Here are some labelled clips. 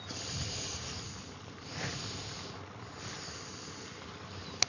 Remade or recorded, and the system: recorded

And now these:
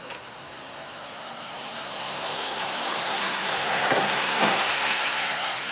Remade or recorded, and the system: remade, codec, SNAC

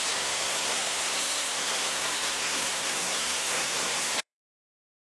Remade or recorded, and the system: remade, codec, SNAC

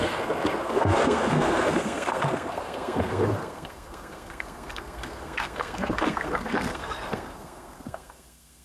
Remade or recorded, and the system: remade, codec, SNAC